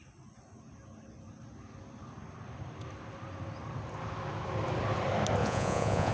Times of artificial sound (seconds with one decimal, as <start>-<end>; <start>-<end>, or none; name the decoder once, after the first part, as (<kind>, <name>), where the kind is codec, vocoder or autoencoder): 5.4-6.1 (vocoder, Vocos)